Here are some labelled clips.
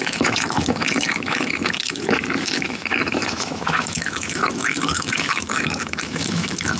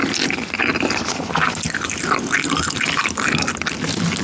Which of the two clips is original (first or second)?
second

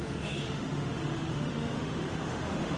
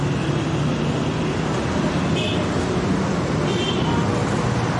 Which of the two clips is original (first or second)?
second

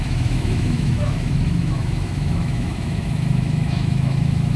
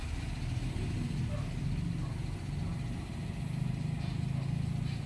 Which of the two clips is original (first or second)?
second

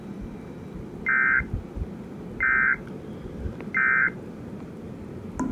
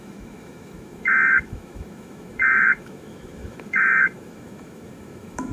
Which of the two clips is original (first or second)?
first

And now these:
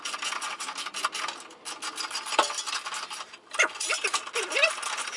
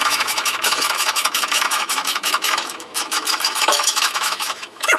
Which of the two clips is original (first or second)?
first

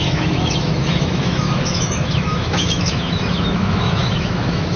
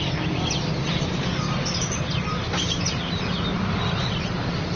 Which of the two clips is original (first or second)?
second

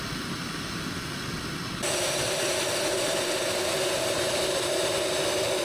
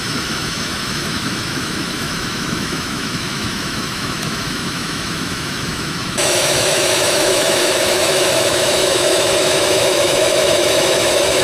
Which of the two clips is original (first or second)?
first